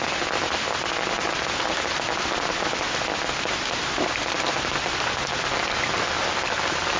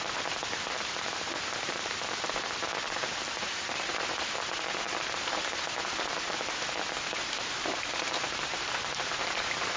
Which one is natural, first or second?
first